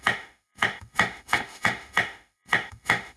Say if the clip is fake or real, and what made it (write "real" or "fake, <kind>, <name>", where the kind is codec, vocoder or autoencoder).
fake, autoencoder, DAC-VAE